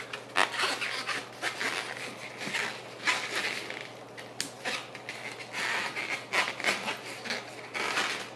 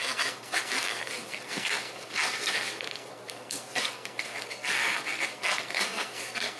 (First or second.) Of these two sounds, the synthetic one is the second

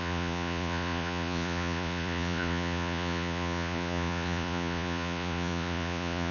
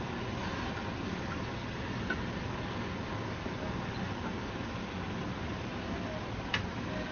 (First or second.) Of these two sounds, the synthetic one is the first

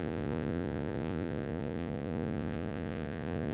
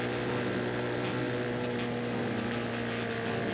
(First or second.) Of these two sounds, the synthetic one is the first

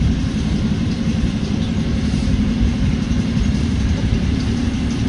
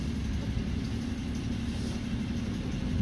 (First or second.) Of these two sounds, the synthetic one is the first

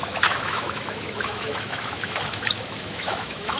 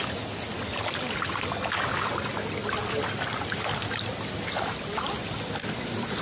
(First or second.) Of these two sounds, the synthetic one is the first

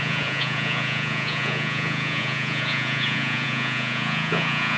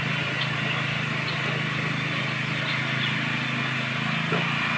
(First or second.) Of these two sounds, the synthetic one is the first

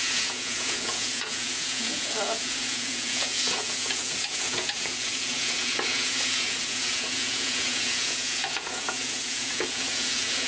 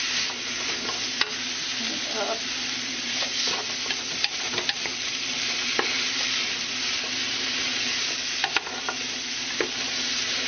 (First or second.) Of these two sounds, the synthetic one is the first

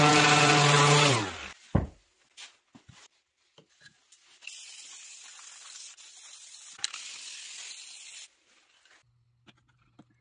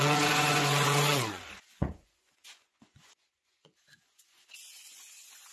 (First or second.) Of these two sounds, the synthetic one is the second